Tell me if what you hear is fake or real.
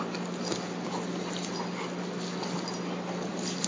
real